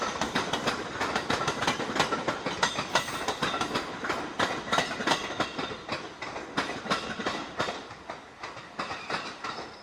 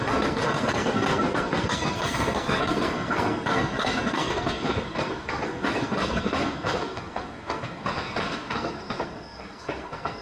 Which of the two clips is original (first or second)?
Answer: first